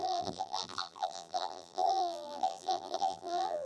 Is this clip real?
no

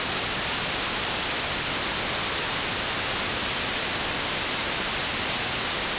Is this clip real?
yes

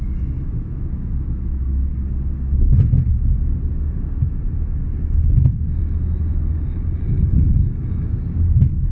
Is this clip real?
yes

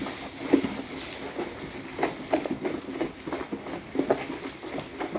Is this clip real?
yes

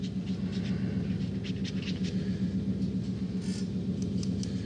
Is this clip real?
yes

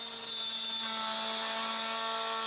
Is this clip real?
yes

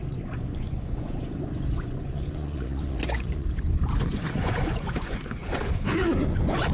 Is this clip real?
no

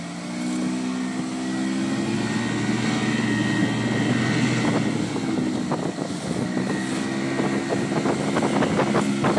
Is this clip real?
yes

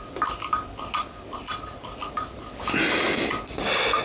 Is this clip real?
yes